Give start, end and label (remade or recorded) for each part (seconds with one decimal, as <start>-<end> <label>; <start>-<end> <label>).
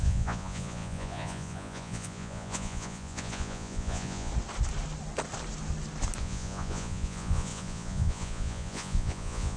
0.0-4.3 remade; 4.3-6.2 recorded; 6.2-9.6 remade